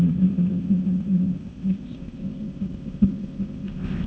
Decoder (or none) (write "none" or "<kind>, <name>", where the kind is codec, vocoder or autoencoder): codec, ZipCodec